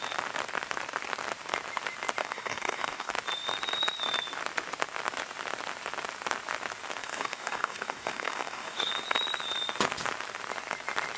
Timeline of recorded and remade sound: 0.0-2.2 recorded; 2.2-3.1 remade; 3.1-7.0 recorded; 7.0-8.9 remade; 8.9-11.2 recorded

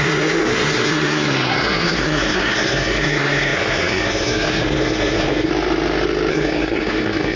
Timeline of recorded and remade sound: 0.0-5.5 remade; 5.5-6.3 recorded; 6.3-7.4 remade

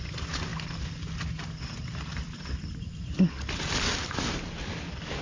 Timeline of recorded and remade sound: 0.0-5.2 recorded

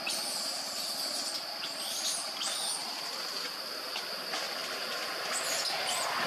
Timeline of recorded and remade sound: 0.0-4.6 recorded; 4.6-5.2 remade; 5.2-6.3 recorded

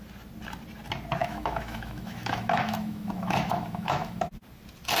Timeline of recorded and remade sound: 0.0-1.2 recorded; 1.2-4.2 remade; 4.2-5.0 recorded

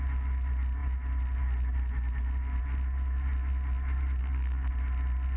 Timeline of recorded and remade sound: 0.0-4.2 recorded; 4.2-4.7 remade; 4.7-5.4 recorded

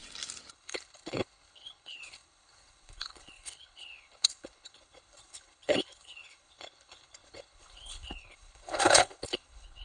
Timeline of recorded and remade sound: 0.0-0.5 recorded; 0.5-9.8 remade

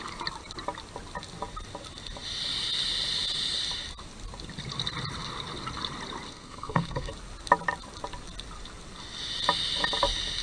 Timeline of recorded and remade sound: 0.0-6.3 recorded; 6.3-7.1 remade; 7.1-10.4 recorded